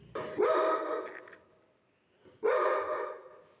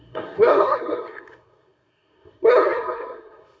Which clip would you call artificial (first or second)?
second